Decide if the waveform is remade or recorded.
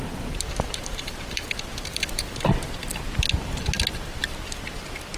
recorded